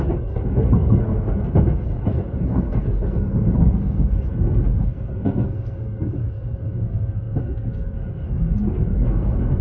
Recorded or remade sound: remade